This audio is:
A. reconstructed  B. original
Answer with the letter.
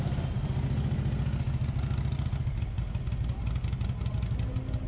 B